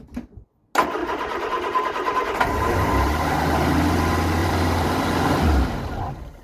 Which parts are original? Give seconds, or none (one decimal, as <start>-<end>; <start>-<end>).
0.0-1.0; 4.0-4.4; 6.0-6.4

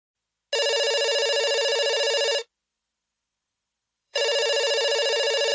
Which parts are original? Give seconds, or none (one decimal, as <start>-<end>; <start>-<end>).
0.0-1.4; 2.0-2.7

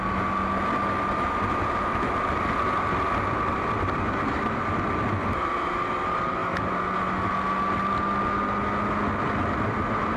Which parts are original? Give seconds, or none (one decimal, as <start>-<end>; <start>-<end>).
0.0-10.2

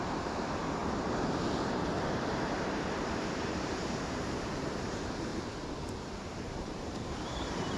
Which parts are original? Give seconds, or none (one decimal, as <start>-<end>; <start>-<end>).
0.8-2.3; 5.3-6.2

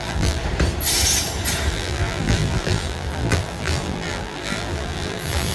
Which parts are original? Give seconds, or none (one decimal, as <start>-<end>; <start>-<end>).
0.4-1.7

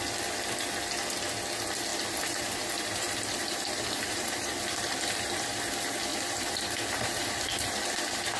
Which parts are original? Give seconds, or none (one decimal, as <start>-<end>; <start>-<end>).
0.0-1.9; 5.5-6.1; 8.0-8.4

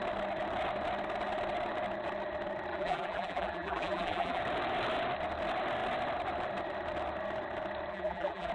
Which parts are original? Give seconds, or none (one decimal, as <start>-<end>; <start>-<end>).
0.0-2.7; 4.4-7.9

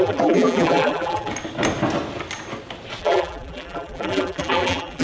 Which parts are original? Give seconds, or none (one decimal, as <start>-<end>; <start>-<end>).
1.3-3.0